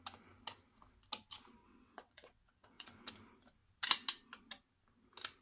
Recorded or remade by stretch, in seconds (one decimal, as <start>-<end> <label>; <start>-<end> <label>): 0.0-1.6 recorded; 1.6-3.1 remade; 3.1-5.4 recorded